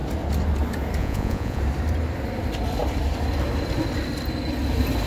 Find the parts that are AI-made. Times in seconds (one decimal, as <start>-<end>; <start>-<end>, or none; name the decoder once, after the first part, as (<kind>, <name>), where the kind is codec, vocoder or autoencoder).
1.0-1.6 (vocoder, Vocos)